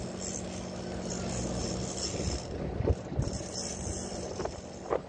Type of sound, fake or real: real